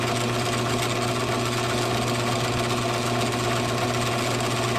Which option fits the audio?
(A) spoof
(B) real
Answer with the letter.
B